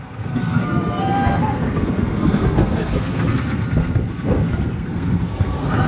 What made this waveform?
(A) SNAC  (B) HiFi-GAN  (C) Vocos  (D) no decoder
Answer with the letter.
A